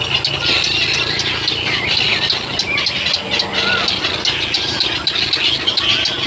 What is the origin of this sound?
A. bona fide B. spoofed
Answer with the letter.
A